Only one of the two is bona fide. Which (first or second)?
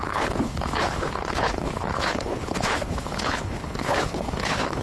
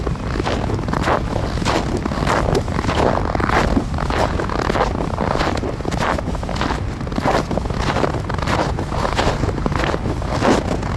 second